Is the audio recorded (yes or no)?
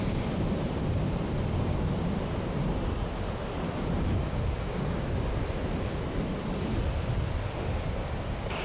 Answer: yes